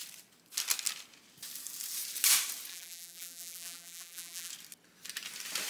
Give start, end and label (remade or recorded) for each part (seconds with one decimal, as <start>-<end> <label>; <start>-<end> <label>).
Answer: 0.0-2.7 recorded; 2.7-4.5 remade; 4.5-5.7 recorded